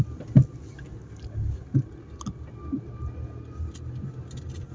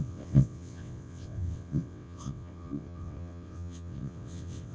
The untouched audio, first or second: first